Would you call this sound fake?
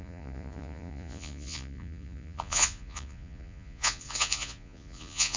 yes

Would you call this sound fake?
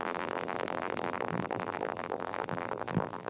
yes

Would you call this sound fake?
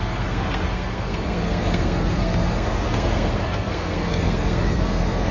yes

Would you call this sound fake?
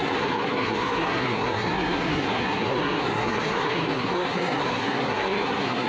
yes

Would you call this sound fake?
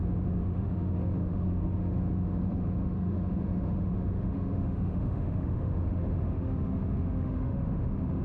yes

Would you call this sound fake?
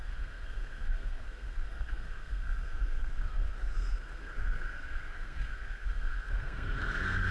yes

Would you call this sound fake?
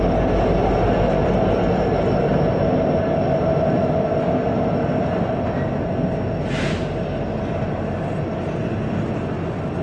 no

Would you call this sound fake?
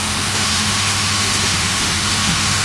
yes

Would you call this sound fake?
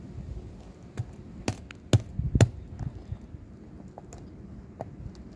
no